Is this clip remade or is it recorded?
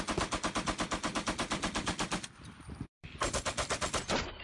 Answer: remade